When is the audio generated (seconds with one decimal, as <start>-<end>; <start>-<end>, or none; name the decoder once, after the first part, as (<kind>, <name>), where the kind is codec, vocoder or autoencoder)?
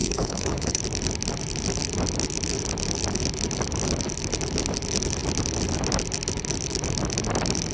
0.0-0.8 (codec, HILCodec)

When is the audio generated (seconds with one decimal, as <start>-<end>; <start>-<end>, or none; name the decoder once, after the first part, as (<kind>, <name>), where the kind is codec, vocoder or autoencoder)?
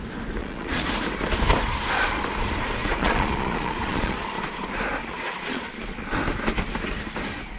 0.4-0.9 (vocoder, Vocos); 2.8-4.4; 5.0-5.7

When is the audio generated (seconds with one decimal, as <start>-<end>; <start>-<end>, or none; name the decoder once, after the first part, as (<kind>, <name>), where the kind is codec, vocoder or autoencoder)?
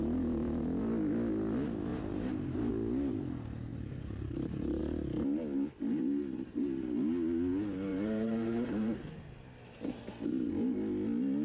1.9-2.7 (vocoder, BigVGAN v2); 3.7-4.8; 7.9-9.3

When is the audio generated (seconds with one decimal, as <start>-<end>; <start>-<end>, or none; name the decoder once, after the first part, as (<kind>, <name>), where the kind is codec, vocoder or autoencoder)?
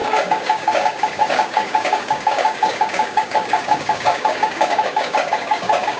0.0-6.0 (codec, DAC)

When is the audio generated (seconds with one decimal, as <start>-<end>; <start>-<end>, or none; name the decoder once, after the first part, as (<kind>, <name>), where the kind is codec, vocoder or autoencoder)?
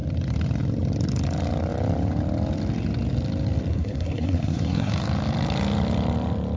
3.7-4.9 (codec, SNAC)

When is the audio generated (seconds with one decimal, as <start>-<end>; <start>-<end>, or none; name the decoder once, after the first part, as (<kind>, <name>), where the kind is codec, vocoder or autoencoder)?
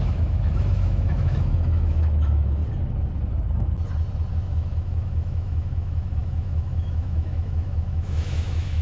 0.0-2.6 (autoencoder, DAC-VAE); 4.3-8.8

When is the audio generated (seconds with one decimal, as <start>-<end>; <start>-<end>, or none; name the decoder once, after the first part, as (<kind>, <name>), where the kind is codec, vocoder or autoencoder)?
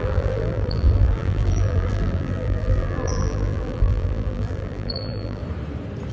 0.0-5.4 (vocoder, BigVGAN v2)